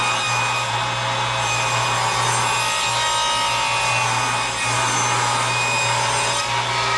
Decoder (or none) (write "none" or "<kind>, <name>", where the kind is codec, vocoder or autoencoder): none